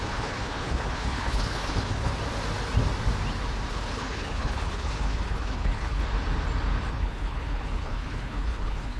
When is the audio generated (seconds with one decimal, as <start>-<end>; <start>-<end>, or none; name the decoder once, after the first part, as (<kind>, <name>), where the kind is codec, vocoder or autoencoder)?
0.0-2.1 (codec, HILCodec); 3.7-6.0; 6.9-9.0